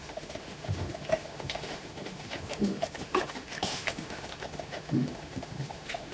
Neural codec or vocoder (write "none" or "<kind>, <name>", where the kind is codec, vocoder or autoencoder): autoencoder, DAC-VAE